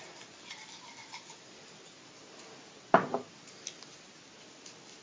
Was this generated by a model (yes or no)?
no